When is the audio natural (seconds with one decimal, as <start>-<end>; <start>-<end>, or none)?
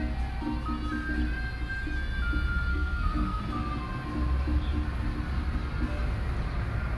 0.0-2.7; 3.4-7.0